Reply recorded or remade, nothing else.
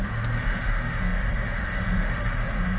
remade